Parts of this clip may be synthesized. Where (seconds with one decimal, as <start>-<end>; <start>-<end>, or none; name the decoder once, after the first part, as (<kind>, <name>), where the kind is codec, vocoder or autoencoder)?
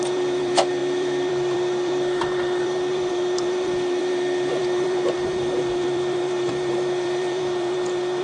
0.0-8.2 (vocoder, BigVGAN v2)